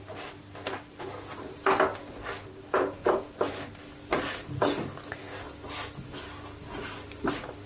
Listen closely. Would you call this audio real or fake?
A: real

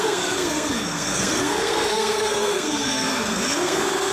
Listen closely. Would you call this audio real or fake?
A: fake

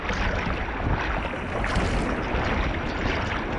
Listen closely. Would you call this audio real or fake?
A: real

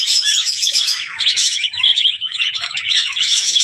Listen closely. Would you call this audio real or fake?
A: fake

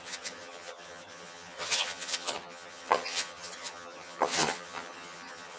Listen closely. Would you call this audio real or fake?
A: fake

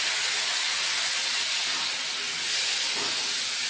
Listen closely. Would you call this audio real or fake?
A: real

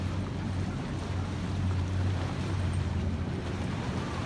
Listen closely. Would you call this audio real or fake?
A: fake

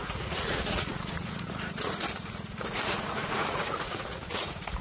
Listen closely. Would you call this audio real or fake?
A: fake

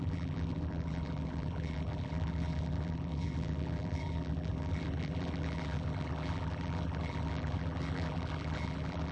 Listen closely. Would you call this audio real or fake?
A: fake